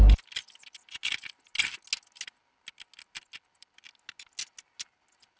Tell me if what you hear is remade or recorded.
recorded